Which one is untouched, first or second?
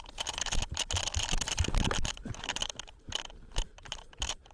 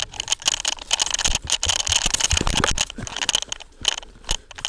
second